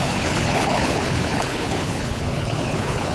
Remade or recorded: remade